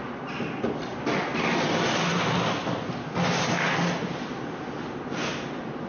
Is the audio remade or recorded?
recorded